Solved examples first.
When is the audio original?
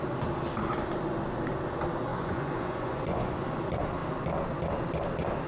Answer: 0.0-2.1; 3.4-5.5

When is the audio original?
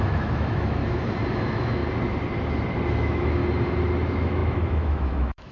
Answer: 0.8-1.4; 1.8-2.9; 3.4-4.0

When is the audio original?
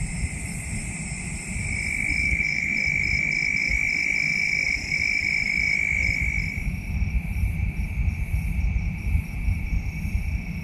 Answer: 0.0-2.2; 2.7-10.6